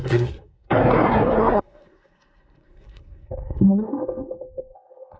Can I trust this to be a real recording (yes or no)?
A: no